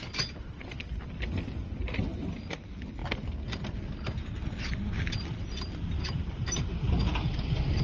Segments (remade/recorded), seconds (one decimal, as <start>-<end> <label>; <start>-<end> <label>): 0.0-7.8 recorded